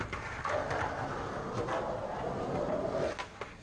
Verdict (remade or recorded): recorded